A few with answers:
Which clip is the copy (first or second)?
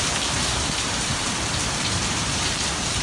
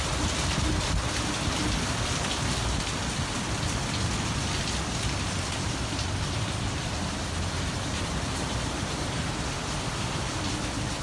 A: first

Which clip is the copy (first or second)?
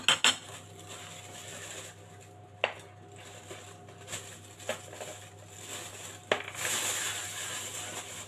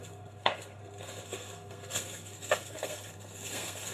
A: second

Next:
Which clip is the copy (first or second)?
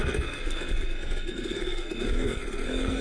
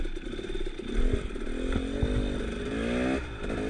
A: first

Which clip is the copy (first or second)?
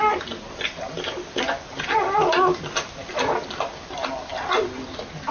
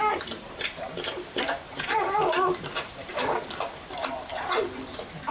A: second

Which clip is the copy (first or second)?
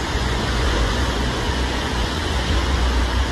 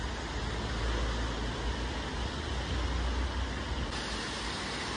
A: first